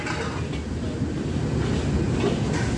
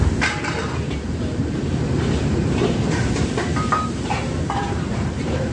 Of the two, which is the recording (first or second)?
first